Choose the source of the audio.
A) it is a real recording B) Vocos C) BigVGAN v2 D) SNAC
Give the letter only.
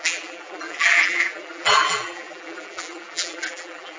C